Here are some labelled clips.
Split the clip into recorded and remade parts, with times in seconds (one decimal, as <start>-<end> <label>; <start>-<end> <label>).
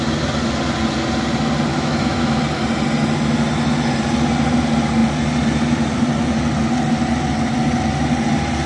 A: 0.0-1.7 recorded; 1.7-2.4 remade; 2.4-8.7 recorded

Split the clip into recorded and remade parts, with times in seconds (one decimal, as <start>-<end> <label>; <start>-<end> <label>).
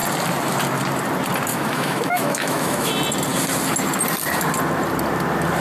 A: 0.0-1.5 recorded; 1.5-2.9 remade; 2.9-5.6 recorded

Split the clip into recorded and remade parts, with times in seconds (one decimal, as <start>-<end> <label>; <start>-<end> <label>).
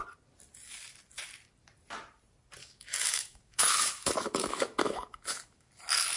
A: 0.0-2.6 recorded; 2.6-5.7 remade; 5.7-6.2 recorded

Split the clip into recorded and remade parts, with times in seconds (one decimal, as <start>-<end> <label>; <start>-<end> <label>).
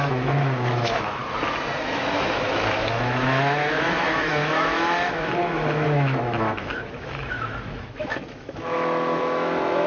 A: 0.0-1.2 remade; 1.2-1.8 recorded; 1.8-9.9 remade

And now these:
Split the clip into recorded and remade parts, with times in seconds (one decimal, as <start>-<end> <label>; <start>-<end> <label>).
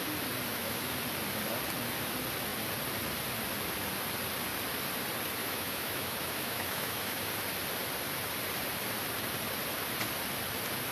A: 0.0-0.5 recorded; 0.5-1.0 remade; 1.0-5.4 recorded; 5.4-7.2 remade; 7.2-10.9 recorded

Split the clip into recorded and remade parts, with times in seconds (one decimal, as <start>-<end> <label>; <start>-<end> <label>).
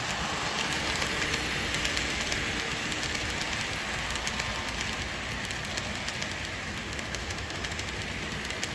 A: 0.0-6.8 recorded; 6.8-7.9 remade; 7.9-8.7 recorded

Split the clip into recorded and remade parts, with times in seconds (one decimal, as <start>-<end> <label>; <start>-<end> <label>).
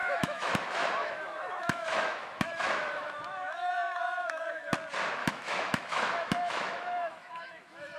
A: 0.0-4.7 remade; 4.7-5.2 recorded; 5.2-8.0 remade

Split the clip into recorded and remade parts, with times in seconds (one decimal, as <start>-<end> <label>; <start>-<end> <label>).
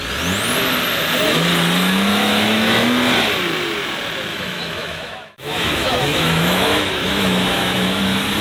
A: 0.0-2.1 recorded; 2.1-2.7 remade; 2.7-4.3 recorded; 4.3-8.0 remade; 8.0-8.4 recorded